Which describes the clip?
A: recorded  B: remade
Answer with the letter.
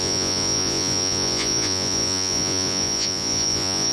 B